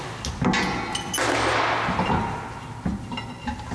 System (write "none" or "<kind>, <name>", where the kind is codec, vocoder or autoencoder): none